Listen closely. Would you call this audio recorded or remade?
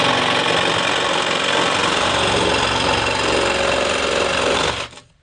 recorded